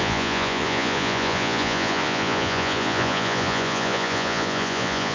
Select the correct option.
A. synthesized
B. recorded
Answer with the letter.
A